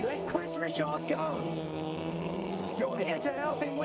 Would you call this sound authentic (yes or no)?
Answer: no